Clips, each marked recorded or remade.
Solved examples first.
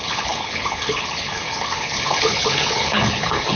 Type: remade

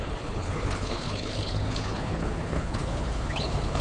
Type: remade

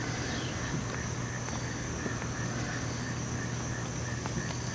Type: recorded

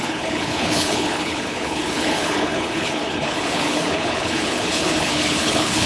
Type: remade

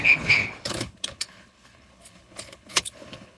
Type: remade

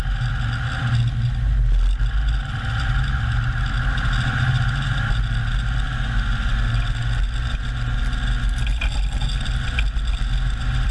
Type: recorded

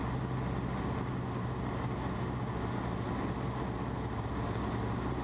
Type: recorded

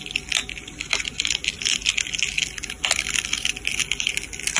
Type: recorded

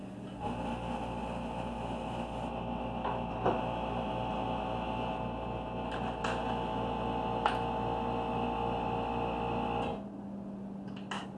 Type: recorded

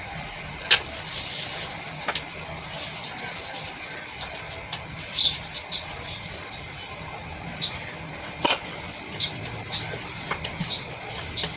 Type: recorded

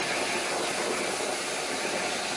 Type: recorded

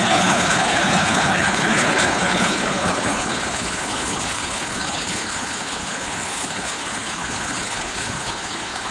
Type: remade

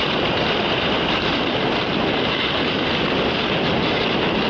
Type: recorded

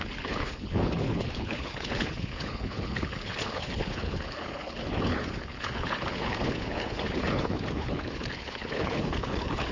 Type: remade